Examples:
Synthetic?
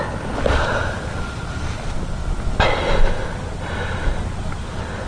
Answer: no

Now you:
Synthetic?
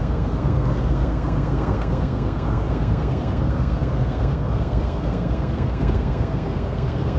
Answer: yes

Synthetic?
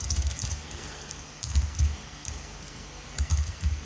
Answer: yes